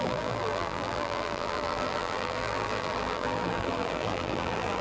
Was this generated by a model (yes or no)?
yes